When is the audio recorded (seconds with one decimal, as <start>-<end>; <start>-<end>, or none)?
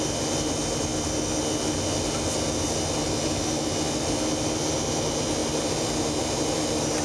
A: 0.0-5.4